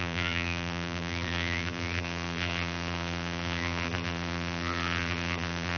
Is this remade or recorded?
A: remade